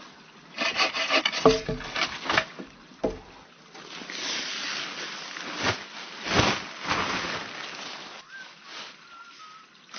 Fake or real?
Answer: real